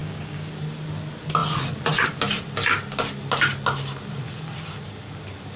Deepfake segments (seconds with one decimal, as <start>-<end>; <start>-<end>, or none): 0.0-0.5